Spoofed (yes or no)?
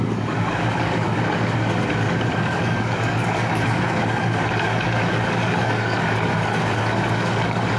yes